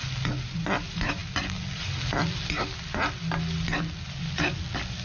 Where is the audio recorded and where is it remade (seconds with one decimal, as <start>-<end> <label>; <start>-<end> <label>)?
0.0-5.0 recorded